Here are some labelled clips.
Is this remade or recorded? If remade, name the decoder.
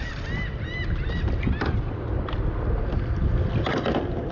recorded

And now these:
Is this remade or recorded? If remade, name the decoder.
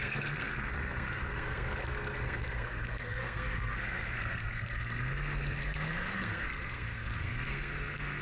remade, codec, SNAC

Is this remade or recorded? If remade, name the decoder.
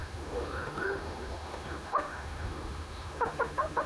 remade, autoencoder, DAC-VAE